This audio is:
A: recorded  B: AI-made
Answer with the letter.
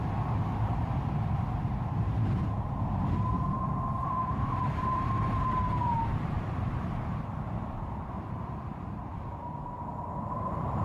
B